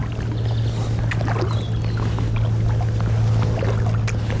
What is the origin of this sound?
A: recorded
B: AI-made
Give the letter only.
A